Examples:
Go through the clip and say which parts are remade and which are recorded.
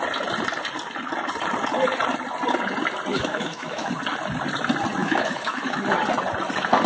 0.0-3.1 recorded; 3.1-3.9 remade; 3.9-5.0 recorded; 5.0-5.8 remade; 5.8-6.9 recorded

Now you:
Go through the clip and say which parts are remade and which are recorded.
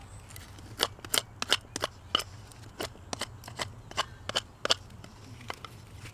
0.0-6.1 recorded